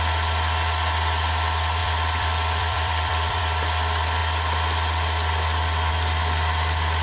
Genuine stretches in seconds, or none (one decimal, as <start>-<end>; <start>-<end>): 0.0-1.8; 3.4-7.0

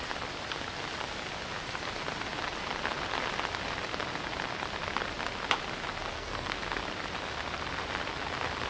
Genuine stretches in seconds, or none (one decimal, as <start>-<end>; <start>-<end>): 0.0-6.1; 6.6-8.7

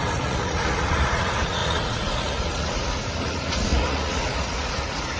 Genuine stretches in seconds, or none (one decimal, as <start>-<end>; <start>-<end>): none